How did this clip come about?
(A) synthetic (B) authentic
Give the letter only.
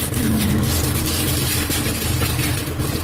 B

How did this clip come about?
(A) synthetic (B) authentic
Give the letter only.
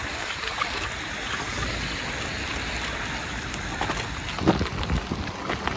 B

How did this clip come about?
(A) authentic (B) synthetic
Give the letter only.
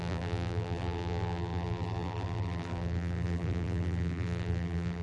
B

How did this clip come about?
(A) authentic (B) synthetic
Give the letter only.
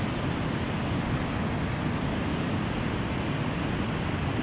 A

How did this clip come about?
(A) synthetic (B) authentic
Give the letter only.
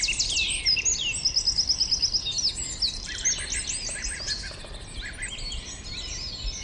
B